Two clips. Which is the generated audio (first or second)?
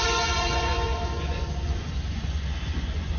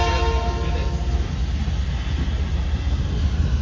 first